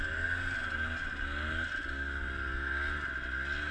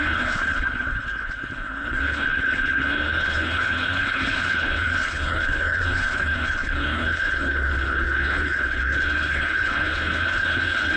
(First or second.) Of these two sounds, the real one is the first